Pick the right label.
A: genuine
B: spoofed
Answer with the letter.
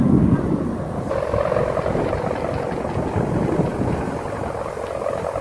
A